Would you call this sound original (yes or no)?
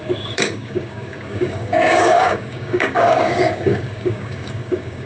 no